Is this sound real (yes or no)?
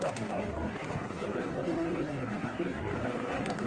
no